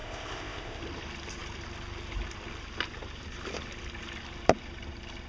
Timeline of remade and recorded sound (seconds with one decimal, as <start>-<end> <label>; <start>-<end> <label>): 0.0-0.8 remade; 0.8-5.3 recorded